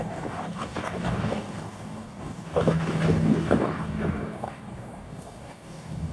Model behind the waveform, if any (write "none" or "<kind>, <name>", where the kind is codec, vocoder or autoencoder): codec, DAC